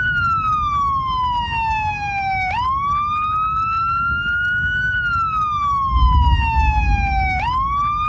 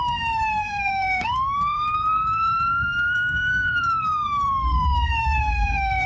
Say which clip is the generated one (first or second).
second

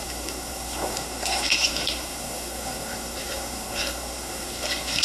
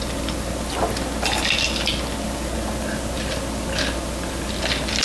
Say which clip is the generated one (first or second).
first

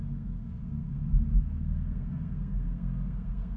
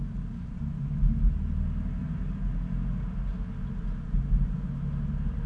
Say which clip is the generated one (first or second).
first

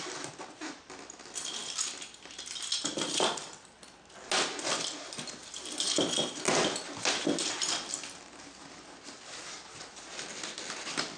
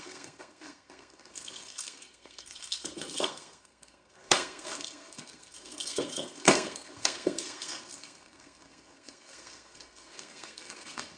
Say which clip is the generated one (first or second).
second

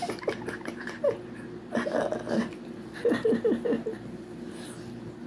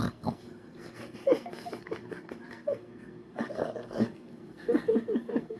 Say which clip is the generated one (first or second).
second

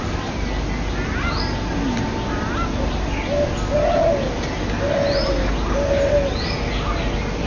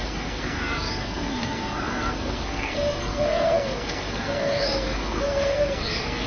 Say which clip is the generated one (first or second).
second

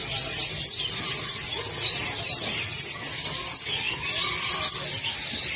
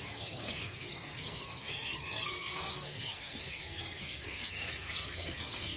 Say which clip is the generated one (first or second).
second